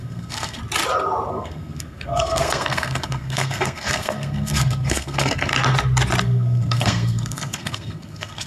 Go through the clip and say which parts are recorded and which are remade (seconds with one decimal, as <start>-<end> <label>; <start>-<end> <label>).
0.0-0.6 remade; 0.6-1.3 recorded; 1.3-5.5 remade; 5.5-6.2 recorded; 6.2-8.5 remade